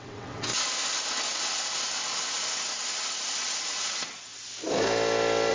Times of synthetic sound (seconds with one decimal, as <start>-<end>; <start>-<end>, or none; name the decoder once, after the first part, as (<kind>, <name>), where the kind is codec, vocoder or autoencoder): 0.0-0.5 (vocoder, WaveNeXt); 3.6-4.3